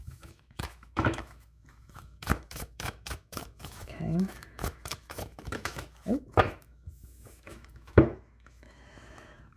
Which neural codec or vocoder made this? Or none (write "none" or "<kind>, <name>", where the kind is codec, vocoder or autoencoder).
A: autoencoder, DAC-VAE